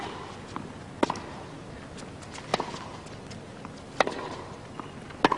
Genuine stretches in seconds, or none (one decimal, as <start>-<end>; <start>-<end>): 0.0-5.4